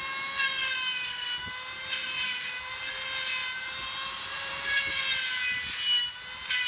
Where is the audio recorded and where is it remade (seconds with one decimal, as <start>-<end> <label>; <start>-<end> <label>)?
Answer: 0.0-2.0 recorded; 2.0-2.8 remade; 2.8-3.4 recorded; 3.4-5.0 remade; 5.0-6.7 recorded